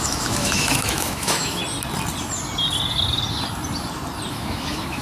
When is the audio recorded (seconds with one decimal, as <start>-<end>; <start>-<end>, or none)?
1.6-4.3